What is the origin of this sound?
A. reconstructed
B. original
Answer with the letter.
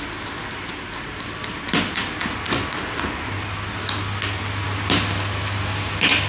B